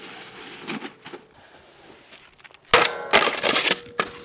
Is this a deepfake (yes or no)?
no